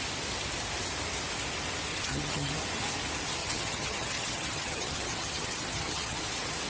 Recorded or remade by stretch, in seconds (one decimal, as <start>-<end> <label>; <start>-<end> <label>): 0.0-1.9 recorded; 1.9-2.5 remade; 2.5-3.4 recorded; 3.4-6.2 remade; 6.2-6.7 recorded